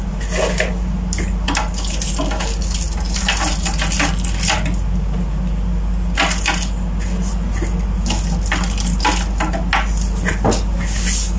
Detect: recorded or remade recorded